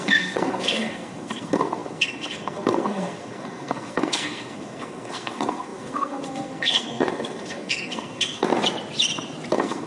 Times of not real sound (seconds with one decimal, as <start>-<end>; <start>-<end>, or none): 0.0-8.5; 9.5-9.9